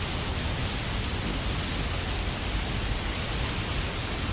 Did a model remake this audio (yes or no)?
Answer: no